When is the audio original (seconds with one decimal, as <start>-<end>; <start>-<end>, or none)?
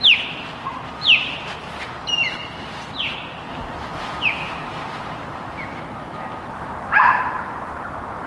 0.0-8.3